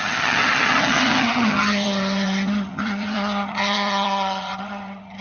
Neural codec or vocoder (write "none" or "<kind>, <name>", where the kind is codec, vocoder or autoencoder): vocoder, HiFi-GAN